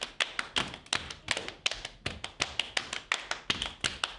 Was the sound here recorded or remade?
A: recorded